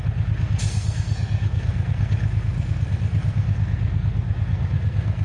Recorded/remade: remade